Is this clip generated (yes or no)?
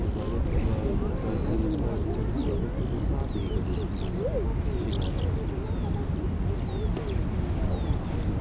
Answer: no